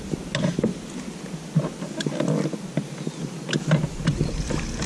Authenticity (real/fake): real